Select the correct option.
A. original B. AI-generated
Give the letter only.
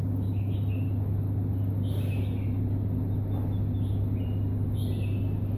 A